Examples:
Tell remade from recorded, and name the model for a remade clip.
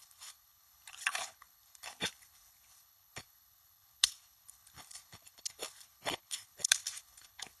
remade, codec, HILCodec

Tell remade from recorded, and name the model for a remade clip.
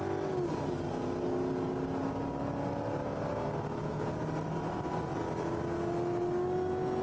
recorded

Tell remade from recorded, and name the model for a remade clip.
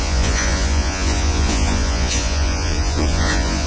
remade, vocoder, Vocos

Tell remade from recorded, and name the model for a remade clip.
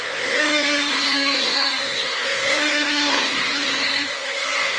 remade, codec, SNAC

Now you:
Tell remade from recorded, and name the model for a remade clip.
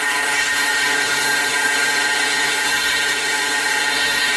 remade, codec, SNAC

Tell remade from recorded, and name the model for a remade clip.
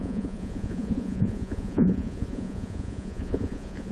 remade, vocoder, Vocos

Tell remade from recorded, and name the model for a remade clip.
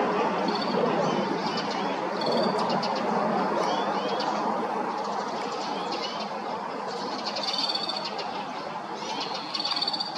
recorded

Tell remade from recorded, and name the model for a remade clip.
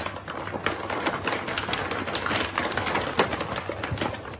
recorded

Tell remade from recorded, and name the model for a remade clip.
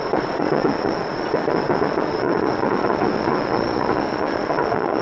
remade, vocoder, Vocos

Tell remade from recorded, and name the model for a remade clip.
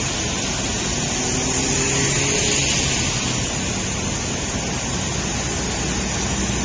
recorded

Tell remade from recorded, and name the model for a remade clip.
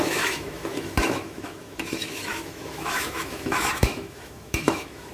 remade, autoencoder, DAC-VAE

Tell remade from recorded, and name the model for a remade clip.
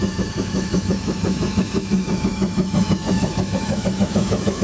remade, autoencoder, DAC-VAE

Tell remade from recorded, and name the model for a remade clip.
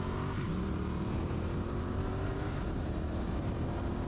remade, vocoder, BigVGAN v2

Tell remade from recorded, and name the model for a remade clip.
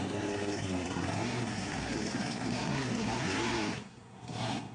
remade, codec, SNAC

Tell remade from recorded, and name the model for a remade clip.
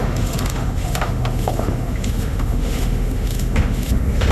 remade, autoencoder, DAC-VAE